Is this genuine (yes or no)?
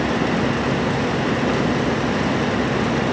yes